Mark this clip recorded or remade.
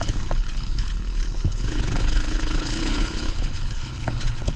remade